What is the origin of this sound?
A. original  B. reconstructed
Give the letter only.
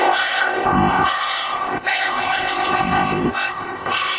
B